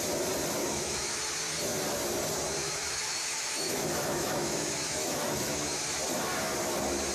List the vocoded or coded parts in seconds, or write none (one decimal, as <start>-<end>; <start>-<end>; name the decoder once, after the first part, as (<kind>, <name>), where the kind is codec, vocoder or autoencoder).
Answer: 0.6-1.2 (autoencoder, DAC-VAE); 2.6-5.9